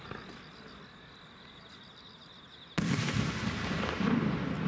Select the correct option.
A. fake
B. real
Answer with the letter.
B